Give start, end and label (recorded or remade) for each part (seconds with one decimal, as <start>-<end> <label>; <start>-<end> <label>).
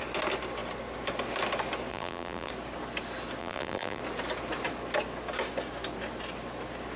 0.0-1.9 recorded; 1.9-2.5 remade; 2.5-3.4 recorded; 3.4-4.0 remade; 4.0-7.0 recorded